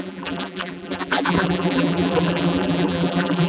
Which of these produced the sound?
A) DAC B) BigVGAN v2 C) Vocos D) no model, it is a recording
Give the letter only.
B